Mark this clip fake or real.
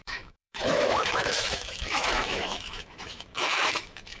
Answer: fake